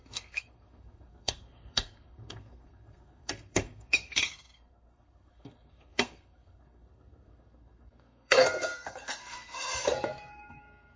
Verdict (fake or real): fake